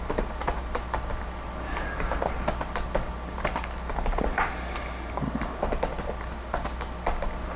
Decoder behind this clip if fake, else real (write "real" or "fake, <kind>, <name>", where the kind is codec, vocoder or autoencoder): real